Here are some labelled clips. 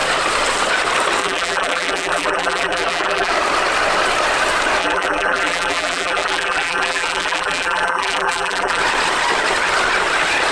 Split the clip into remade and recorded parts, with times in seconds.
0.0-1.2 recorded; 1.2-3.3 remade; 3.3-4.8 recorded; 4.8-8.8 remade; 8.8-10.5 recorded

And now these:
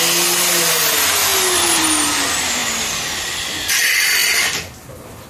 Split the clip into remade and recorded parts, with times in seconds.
0.0-5.3 recorded

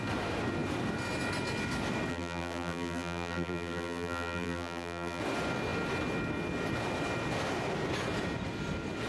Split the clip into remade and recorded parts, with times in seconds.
0.0-2.1 recorded; 2.1-5.2 remade; 5.2-9.1 recorded

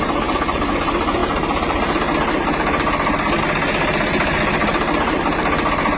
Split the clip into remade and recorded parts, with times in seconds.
0.0-4.6 recorded; 4.6-5.1 remade; 5.1-6.0 recorded

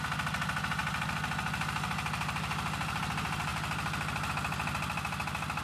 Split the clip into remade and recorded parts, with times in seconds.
0.0-5.6 recorded